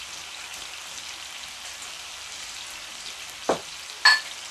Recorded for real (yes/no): yes